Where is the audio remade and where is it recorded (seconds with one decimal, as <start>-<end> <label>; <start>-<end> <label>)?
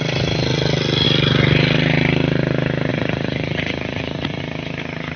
0.0-2.9 recorded; 2.9-4.4 remade; 4.4-5.2 recorded